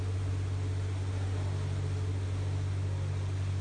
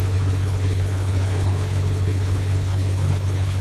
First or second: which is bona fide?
first